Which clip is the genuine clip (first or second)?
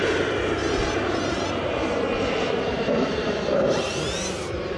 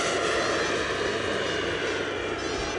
second